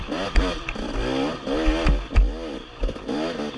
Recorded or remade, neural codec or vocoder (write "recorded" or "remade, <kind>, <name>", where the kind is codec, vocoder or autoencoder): recorded